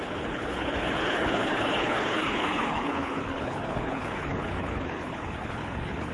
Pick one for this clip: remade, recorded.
remade